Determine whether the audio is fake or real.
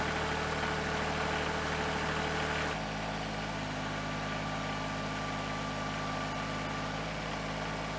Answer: real